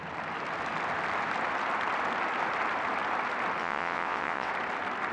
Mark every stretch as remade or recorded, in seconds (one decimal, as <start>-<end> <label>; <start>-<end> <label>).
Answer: 0.0-3.6 recorded; 3.6-4.5 remade; 4.5-5.1 recorded

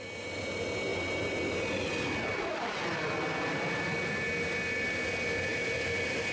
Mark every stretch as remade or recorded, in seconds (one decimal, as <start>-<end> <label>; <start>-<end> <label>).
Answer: 0.0-6.3 recorded

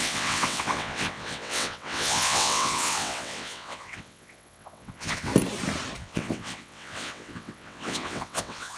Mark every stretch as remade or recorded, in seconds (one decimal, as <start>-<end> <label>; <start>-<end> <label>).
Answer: 0.0-5.3 remade; 5.3-6.0 recorded; 6.0-8.8 remade

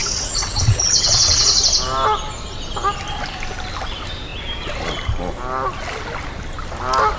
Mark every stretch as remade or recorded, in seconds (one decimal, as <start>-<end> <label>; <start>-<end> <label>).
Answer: 0.0-1.6 remade; 1.6-7.2 recorded

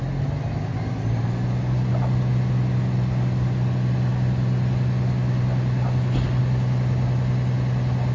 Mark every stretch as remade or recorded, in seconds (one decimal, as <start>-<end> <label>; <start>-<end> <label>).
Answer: 0.0-8.1 recorded

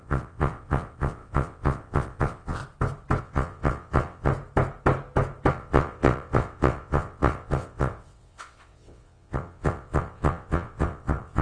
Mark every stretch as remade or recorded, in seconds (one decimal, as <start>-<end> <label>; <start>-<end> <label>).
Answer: 0.0-2.6 remade; 2.6-3.2 recorded; 3.2-4.3 remade; 4.3-5.5 recorded; 5.5-11.4 remade